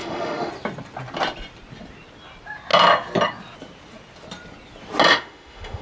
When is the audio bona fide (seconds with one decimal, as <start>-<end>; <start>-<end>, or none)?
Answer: 0.5-5.1